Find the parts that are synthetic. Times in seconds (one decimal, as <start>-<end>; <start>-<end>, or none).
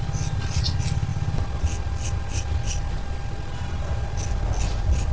none